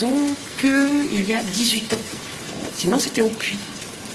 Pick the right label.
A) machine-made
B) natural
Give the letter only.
A